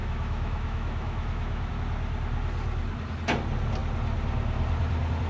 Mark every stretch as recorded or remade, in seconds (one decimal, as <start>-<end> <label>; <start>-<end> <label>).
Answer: 0.0-1.7 remade; 1.7-5.3 recorded